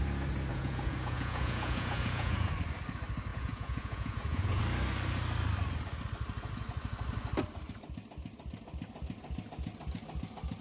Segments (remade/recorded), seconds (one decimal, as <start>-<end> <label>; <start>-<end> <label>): 0.0-0.5 recorded; 0.5-2.5 remade; 2.5-3.3 recorded; 3.3-4.6 remade; 4.6-10.6 recorded